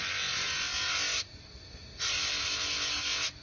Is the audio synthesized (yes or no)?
no